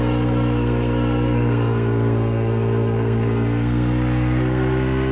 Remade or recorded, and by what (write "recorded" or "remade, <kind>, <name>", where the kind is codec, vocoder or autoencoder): remade, codec, SNAC